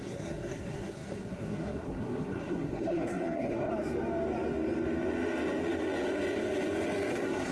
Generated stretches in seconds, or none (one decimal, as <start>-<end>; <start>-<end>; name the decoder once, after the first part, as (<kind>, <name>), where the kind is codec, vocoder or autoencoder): 0.0-3.7 (codec, SNAC); 7.1-7.5